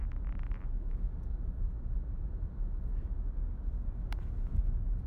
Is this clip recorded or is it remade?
recorded